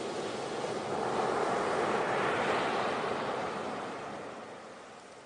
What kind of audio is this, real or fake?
real